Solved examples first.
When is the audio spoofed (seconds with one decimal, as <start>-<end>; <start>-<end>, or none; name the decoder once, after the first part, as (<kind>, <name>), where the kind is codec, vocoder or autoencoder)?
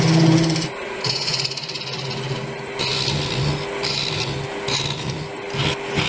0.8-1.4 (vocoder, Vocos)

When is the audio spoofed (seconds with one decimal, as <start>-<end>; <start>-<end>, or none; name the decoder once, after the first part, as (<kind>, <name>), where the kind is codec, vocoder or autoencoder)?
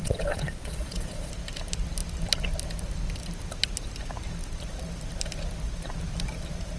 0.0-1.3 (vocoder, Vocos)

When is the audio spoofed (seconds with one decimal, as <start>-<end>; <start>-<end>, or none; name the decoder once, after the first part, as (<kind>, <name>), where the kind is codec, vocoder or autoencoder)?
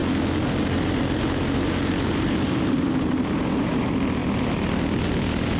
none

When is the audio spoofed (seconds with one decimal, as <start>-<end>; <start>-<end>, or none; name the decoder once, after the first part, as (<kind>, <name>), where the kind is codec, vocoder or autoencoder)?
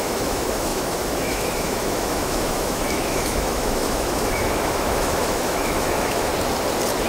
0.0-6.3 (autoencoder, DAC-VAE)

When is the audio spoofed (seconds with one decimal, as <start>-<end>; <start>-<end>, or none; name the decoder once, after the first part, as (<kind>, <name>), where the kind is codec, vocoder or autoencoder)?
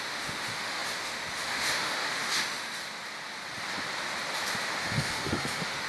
0.0-2.8 (autoencoder, DAC-VAE); 4.8-5.9